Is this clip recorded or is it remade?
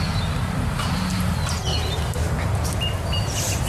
recorded